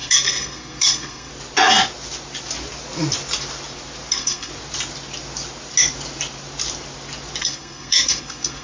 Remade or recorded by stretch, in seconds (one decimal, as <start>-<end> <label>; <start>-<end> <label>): 0.0-1.3 remade; 1.3-4.1 recorded; 4.1-4.5 remade; 4.5-7.4 recorded; 7.4-8.6 remade